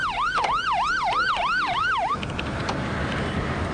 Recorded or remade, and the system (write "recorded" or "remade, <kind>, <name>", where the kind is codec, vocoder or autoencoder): remade, vocoder, BigVGAN v2